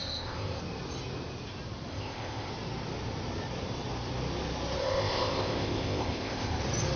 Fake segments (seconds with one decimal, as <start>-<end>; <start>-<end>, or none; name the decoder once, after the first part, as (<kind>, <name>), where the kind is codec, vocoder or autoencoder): 0.0-0.6 (codec, ZipCodec); 1.9-2.5; 4.8-6.6